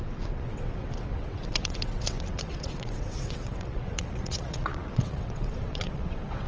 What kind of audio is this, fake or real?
fake